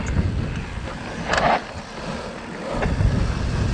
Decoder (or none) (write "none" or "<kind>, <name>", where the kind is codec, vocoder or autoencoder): none